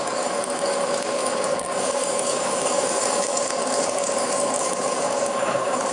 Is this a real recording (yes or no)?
no